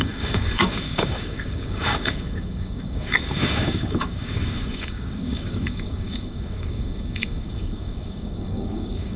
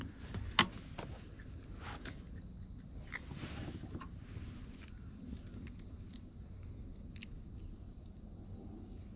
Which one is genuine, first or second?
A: second